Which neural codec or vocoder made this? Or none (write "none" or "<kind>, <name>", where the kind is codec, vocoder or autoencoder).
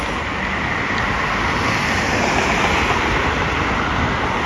none